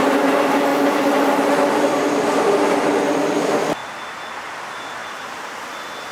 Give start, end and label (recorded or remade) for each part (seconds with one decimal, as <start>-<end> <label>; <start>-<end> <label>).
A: 0.0-5.0 recorded; 5.0-5.6 remade; 5.6-6.1 recorded